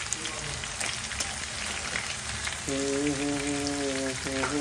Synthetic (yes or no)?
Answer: no